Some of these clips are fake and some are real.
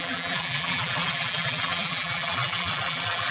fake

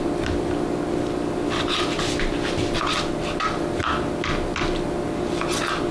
real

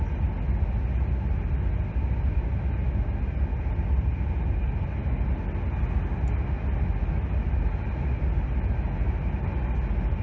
real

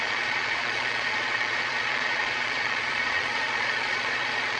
fake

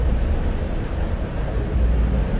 real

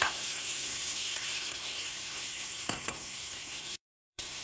fake